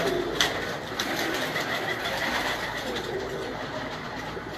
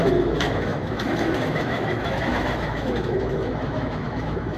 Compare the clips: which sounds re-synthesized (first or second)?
second